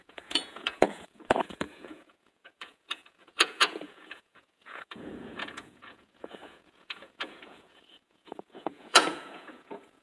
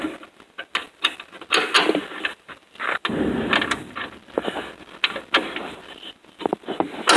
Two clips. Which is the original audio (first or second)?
second